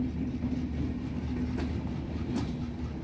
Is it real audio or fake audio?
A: real